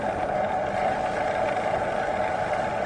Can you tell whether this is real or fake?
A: real